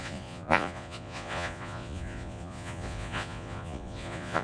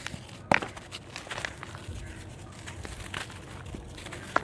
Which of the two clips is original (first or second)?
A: second